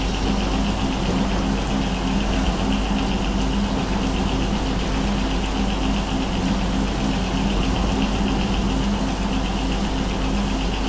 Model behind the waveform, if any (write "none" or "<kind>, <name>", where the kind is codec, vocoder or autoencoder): none